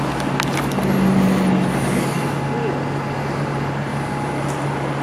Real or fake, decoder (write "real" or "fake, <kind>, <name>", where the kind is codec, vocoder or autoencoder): real